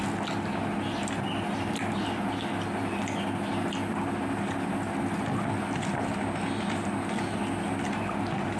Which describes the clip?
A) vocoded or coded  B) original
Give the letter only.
B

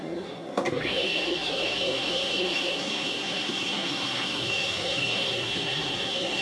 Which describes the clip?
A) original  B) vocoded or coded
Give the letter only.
B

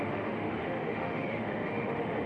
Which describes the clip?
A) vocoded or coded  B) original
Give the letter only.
A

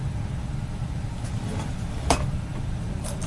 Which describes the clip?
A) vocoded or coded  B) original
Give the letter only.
B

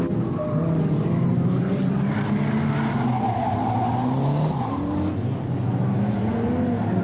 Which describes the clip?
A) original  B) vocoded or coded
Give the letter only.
A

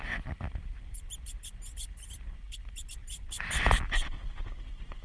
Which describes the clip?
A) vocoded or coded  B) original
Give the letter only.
B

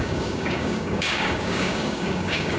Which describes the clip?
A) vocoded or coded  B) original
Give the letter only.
A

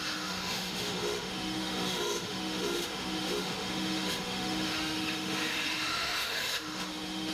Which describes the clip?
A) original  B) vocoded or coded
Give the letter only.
B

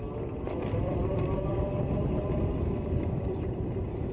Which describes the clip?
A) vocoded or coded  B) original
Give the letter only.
B